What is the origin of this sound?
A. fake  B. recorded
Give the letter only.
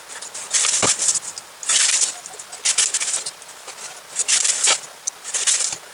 B